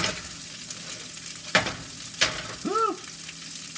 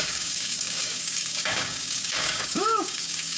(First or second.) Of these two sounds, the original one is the first